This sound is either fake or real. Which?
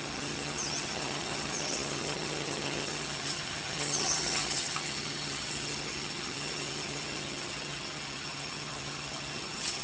fake